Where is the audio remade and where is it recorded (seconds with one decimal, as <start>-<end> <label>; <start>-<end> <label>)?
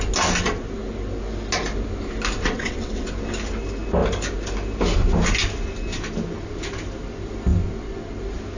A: 0.0-2.4 recorded; 2.4-3.1 remade; 3.1-8.6 recorded